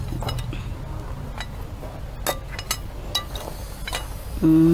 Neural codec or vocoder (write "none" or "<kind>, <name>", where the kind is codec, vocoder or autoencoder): none